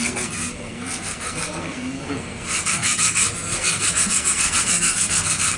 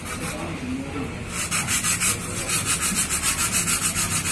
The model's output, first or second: first